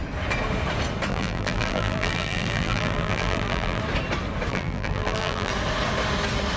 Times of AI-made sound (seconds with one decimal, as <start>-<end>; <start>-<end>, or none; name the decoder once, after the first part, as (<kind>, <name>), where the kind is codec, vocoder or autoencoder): 1.1-3.8 (vocoder, BigVGAN v2); 4.5-5.5